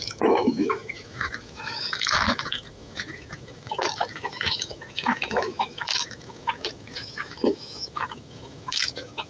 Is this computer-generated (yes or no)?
yes